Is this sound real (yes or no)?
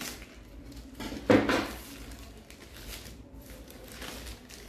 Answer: yes